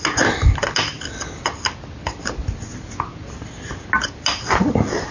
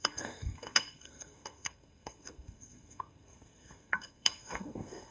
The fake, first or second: second